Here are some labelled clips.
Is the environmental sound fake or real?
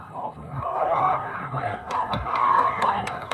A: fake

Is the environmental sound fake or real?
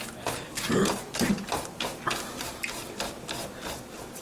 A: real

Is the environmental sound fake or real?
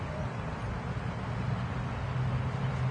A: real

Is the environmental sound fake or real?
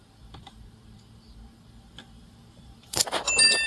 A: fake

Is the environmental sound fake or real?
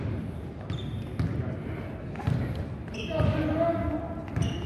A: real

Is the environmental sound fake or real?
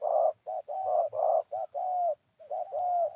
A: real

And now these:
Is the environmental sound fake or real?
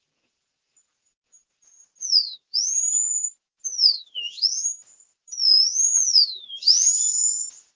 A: fake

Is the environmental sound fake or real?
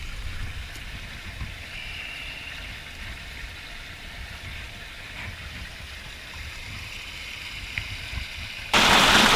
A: real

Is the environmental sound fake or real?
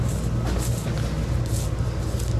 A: real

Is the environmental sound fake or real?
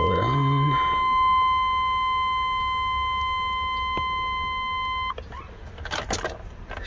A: real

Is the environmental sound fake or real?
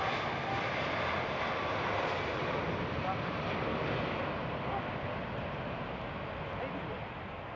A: real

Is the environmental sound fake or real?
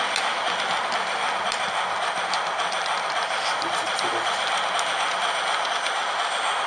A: real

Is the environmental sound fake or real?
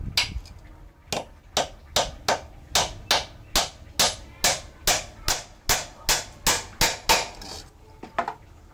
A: real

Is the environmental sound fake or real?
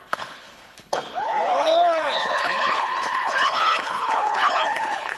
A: fake